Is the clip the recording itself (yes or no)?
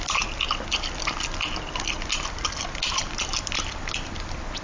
yes